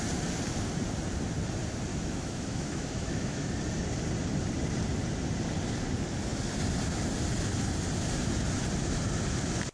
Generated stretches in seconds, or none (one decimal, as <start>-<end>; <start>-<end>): 1.9-3.5